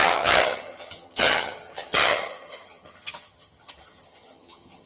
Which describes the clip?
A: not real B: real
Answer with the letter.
A